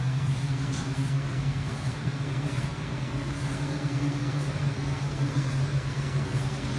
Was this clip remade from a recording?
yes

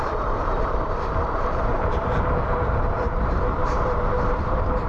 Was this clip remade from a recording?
yes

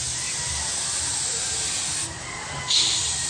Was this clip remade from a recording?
no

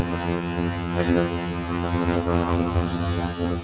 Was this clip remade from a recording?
yes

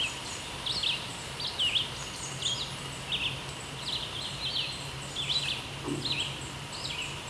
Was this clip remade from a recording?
no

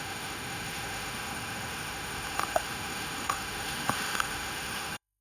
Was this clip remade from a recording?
yes